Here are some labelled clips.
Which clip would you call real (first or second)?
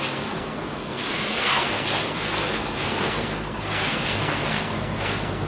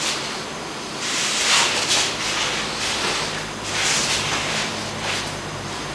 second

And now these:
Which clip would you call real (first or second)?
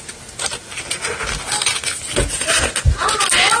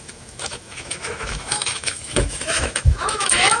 first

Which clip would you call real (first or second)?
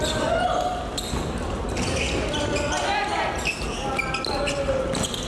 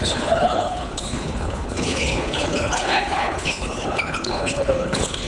first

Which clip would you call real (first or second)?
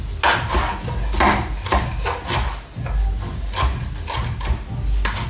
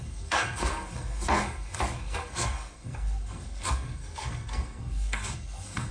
first